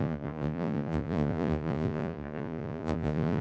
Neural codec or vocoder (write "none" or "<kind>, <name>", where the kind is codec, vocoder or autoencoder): vocoder, Vocos